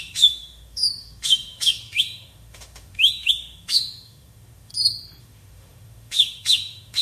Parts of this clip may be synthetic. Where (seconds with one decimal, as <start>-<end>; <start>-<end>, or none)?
0.0-4.7; 5.2-7.0